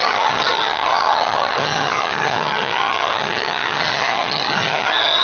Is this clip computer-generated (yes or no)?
yes